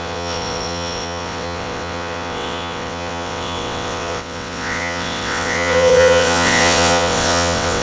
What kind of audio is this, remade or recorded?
remade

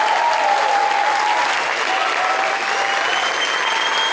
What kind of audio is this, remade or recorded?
recorded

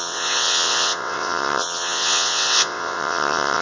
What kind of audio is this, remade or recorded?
remade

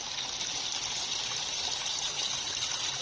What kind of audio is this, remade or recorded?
recorded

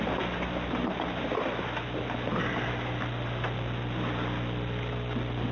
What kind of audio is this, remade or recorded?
recorded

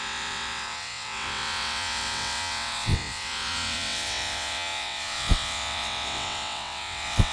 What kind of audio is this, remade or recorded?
remade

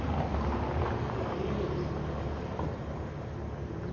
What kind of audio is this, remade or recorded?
recorded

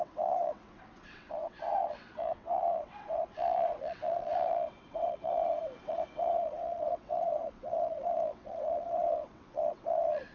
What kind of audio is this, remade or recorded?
remade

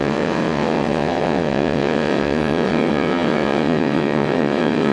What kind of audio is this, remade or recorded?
remade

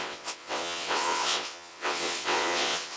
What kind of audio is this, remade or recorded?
remade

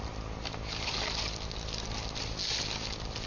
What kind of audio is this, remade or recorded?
recorded